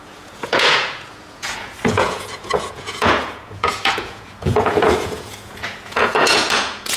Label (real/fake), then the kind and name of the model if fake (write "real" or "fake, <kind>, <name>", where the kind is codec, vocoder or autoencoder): fake, vocoder, Vocos